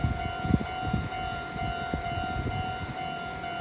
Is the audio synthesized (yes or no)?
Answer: no